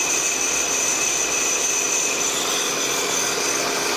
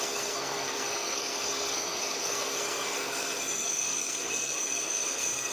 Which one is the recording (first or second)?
first